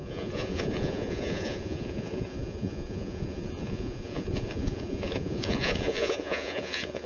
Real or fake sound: fake